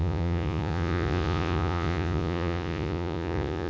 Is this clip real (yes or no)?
no